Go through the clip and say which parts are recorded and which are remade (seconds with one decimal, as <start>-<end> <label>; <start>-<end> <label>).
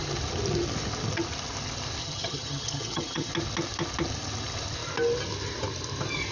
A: 0.0-2.0 recorded; 2.0-3.3 remade; 3.3-6.3 recorded